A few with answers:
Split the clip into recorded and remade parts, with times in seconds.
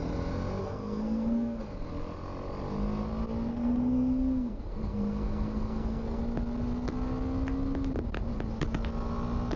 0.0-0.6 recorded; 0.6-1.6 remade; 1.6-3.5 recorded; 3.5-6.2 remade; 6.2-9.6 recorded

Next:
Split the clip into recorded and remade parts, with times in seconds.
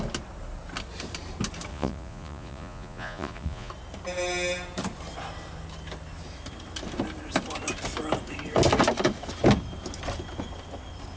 0.0-1.7 recorded; 1.7-3.7 remade; 3.7-11.2 recorded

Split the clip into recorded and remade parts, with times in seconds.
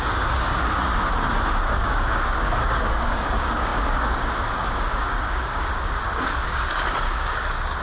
0.0-0.9 remade; 0.9-1.7 recorded; 1.7-7.8 remade